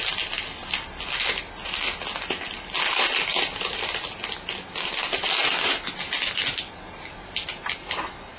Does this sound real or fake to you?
real